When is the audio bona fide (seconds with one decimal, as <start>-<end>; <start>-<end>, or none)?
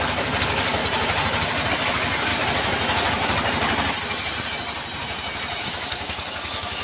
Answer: 0.8-1.7; 2.3-5.6